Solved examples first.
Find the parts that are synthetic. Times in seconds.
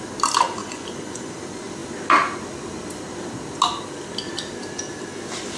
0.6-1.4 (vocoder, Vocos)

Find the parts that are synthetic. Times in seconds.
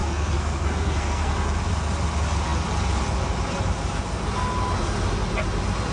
0.0-1.3 (codec, SNAC)